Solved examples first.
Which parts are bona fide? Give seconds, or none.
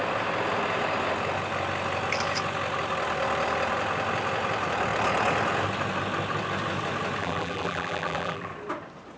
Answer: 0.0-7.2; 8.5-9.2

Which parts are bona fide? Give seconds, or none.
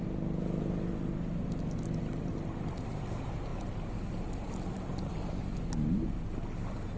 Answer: 0.0-3.5; 5.1-7.0